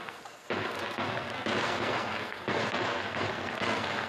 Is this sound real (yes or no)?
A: no